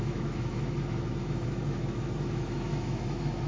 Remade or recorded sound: remade